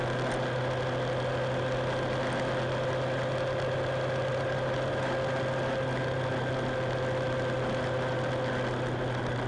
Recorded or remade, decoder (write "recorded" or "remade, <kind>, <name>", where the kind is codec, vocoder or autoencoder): recorded